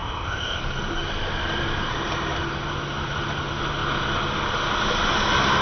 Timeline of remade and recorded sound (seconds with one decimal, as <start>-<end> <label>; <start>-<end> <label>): 0.0-0.6 remade; 0.6-5.6 recorded